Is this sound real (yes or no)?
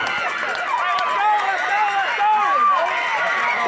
yes